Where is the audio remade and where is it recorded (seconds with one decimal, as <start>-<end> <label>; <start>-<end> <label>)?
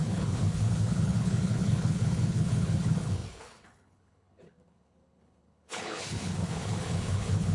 0.0-7.5 remade